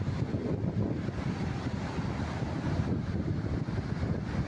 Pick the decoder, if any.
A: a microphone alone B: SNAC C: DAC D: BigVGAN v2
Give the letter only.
A